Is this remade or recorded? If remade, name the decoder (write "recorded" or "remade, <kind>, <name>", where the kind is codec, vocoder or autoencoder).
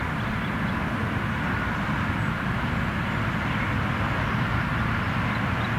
recorded